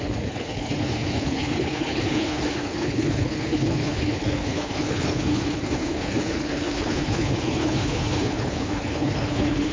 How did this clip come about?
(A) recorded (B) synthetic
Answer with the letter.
B